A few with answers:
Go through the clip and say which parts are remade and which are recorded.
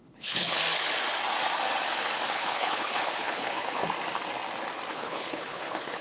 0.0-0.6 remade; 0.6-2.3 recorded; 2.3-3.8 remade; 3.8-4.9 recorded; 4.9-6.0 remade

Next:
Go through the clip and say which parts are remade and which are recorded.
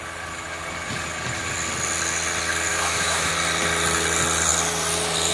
0.0-2.7 recorded; 2.7-3.3 remade; 3.3-5.3 recorded